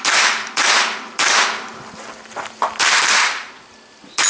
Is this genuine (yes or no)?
yes